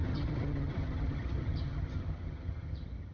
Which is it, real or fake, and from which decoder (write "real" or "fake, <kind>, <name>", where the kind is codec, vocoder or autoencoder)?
fake, vocoder, HiFi-GAN